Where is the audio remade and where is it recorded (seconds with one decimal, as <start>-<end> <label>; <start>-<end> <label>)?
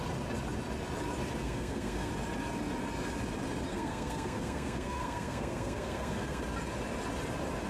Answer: 0.0-1.4 recorded; 1.4-2.1 remade; 2.1-3.7 recorded; 3.7-6.4 remade; 6.4-7.7 recorded